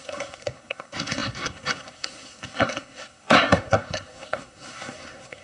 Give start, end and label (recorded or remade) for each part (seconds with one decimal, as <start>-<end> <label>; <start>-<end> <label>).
0.0-5.4 remade